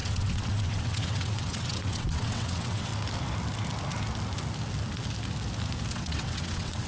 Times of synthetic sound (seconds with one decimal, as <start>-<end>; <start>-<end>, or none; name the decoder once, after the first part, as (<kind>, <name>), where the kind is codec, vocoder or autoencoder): 0.0-2.9 (vocoder, WaveNeXt); 5.9-6.9